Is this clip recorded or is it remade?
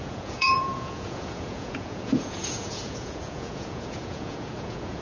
remade